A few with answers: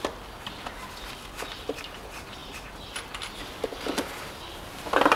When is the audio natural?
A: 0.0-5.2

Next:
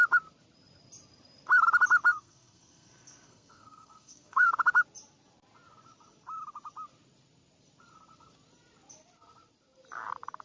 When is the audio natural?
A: 0.0-2.1; 4.5-10.4

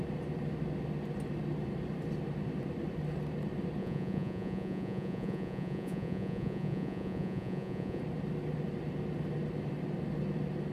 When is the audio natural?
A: 0.0-3.8; 8.0-10.7

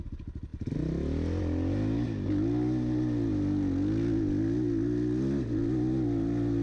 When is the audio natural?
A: 0.0-6.6